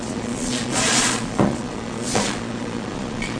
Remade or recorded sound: remade